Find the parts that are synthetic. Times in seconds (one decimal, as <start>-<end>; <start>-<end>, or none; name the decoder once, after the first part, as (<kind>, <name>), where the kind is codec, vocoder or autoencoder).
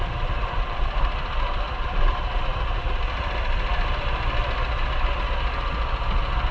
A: none